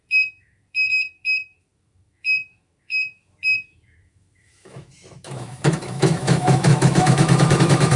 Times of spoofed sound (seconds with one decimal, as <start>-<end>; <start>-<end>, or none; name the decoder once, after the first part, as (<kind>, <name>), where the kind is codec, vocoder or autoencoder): 0.0-8.0 (autoencoder, DAC-VAE)